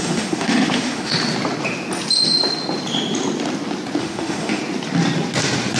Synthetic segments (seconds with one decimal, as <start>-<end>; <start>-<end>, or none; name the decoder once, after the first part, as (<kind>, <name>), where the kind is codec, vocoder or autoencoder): 0.0-1.1 (autoencoder, DAC-VAE); 4.0-4.6